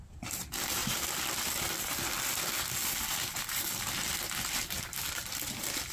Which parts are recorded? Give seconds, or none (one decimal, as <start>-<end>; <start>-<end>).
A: 0.0-5.9